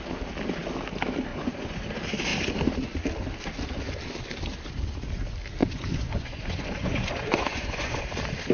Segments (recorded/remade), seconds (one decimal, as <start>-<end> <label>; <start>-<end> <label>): 0.0-1.3 recorded; 1.3-1.8 remade; 1.8-5.6 recorded; 5.6-8.0 remade; 8.0-8.5 recorded